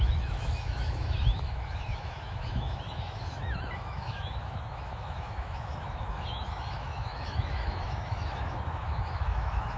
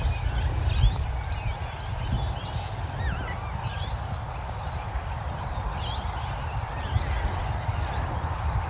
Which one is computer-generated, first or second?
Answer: first